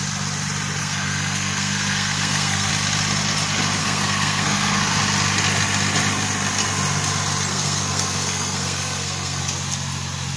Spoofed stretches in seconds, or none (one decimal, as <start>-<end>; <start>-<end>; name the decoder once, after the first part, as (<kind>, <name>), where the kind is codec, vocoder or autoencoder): 0.8-2.7 (codec, SNAC); 3.8-5.0; 7.5-9.4